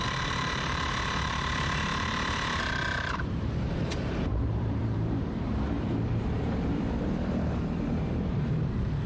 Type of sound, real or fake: fake